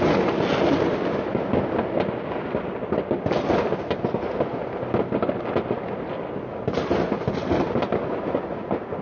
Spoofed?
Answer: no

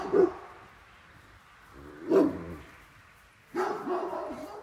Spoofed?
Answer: no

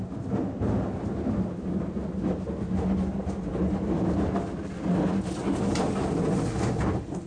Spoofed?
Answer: no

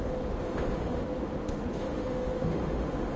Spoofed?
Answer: yes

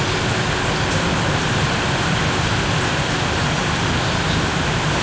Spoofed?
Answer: no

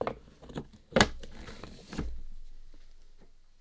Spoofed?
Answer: no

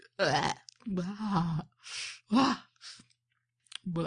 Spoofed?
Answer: no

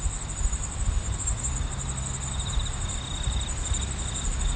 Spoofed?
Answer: no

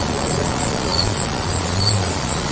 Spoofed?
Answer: yes